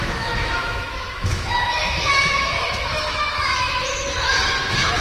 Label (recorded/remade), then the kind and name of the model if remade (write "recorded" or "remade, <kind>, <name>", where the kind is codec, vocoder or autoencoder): remade, autoencoder, DAC-VAE